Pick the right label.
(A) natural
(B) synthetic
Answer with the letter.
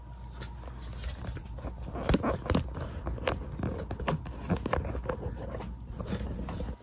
A